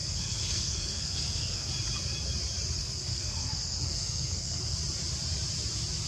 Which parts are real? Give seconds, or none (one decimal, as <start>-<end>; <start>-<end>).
1.7-2.8; 4.8-6.1